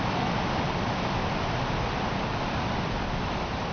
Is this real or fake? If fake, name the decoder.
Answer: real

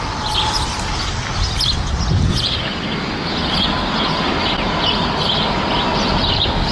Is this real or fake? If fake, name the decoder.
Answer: real